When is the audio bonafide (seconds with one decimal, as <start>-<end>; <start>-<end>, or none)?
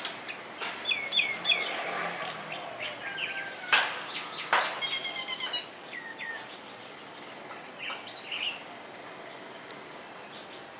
0.0-10.8